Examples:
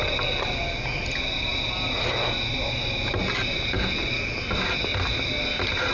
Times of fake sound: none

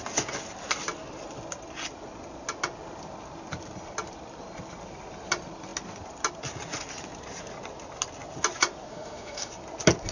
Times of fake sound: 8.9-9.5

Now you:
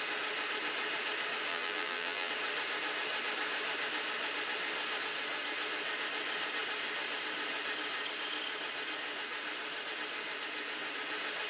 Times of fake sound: 1.5-2.3

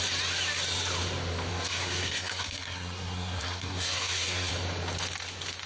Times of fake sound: 1.5-4.5

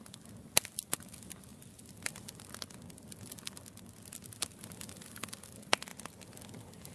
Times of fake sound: none